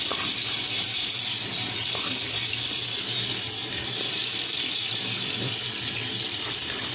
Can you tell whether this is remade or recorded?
recorded